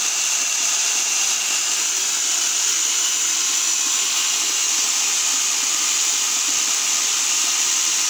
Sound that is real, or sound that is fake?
real